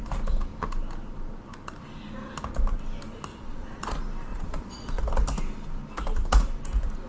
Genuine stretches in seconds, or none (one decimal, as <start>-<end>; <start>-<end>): 0.0-3.3; 3.9-4.3; 5.0-7.1